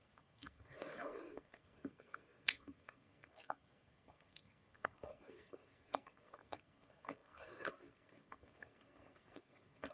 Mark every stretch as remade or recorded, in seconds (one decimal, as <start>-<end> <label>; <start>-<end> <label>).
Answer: 0.0-9.9 remade